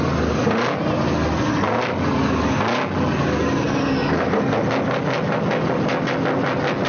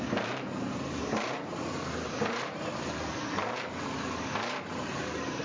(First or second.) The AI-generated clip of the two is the second